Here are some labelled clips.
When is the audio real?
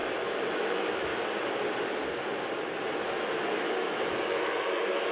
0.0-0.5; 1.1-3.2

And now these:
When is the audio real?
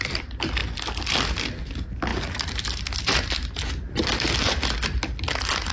0.0-5.7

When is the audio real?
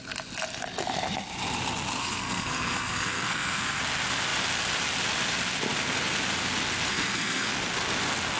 0.0-2.0; 3.8-6.9; 7.5-8.4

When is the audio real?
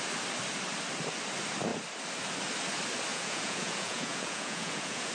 0.0-3.1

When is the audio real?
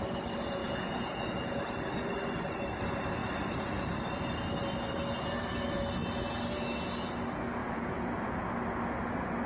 0.0-0.6; 1.6-7.6; 8.5-9.5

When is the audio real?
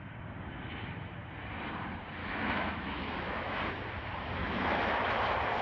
0.0-2.2; 3.6-4.4; 5.0-5.6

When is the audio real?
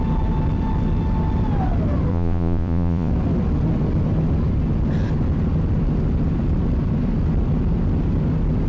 0.0-2.1; 3.1-8.7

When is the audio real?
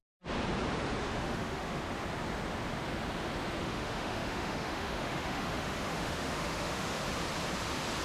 0.0-1.0; 1.8-3.6; 7.0-8.0